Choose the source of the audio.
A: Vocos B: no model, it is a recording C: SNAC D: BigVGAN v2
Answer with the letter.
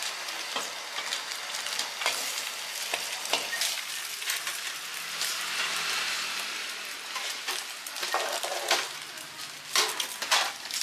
B